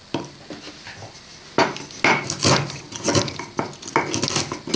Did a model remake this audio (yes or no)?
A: no